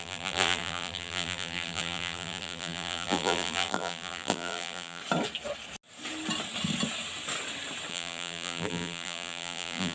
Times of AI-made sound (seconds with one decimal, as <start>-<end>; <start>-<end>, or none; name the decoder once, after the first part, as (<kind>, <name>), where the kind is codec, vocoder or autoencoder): 0.0-5.0 (vocoder, BigVGAN v2); 7.9-9.9

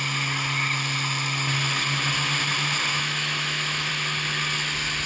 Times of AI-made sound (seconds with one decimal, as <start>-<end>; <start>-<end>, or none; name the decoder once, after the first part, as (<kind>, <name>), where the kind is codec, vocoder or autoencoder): 2.9-3.9 (autoencoder, DAC-VAE)

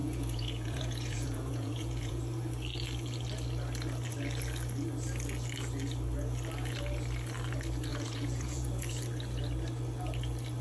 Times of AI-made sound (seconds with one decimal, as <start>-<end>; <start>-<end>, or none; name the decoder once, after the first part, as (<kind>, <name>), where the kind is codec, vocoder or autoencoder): 0.0-2.2 (vocoder, Vocos); 7.9-8.9

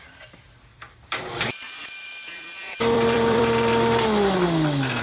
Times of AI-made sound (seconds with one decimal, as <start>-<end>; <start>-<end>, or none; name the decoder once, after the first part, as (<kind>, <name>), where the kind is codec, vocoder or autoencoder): 0.7-3.7 (vocoder, BigVGAN v2)

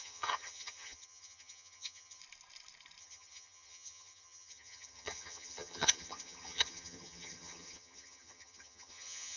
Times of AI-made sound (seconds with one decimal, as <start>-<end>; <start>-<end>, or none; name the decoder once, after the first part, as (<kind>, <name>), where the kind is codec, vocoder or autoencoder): 0.0-2.2 (vocoder, HiFi-GAN); 3.0-9.4

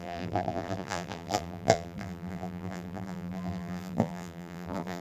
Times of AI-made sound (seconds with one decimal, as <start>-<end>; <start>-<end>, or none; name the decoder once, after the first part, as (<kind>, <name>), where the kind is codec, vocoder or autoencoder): 0.0-5.0 (vocoder, BigVGAN v2)

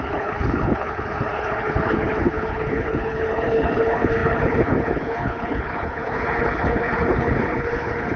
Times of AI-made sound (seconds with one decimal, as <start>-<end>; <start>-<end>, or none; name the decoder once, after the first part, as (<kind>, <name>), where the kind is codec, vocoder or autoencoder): 0.0-8.2 (codec, HILCodec)

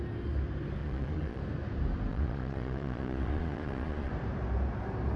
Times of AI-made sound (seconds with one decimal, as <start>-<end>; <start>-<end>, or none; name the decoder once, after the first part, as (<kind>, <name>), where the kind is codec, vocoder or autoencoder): 0.8-1.4 (vocoder, Vocos); 2.1-4.1